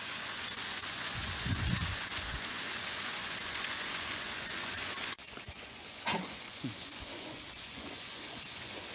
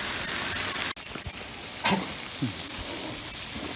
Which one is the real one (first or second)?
second